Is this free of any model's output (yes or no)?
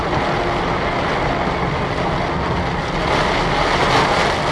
yes